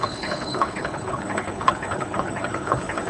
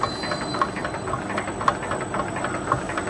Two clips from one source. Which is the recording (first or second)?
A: second